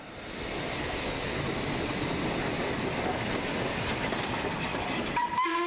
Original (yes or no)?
yes